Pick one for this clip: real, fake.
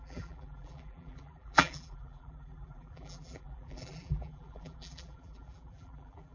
fake